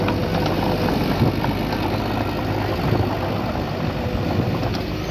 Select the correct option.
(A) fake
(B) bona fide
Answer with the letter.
B